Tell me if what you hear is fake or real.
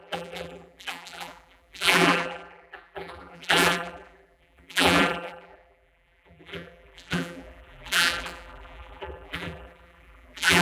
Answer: fake